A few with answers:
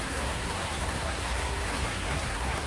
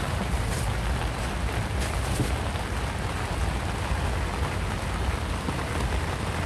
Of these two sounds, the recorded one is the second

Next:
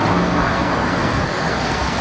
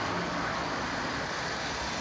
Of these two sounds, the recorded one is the second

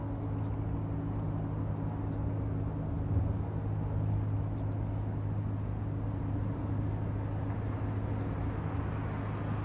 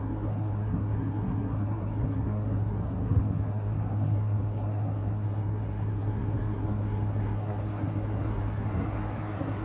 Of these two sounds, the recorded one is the first